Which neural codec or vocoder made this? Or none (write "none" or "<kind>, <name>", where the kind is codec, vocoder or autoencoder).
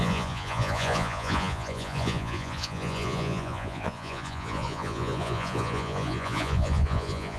vocoder, Vocos